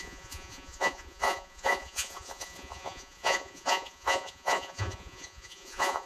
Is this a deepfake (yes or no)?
yes